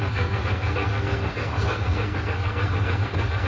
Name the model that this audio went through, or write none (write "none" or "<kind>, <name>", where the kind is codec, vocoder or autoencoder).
codec, SNAC